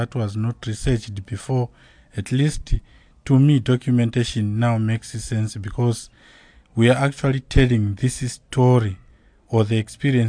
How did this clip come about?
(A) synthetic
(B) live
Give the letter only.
B